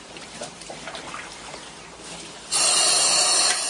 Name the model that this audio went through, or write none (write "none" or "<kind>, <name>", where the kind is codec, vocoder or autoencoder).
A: vocoder, BigVGAN v2